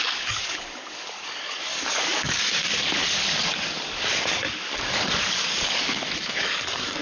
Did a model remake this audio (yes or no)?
yes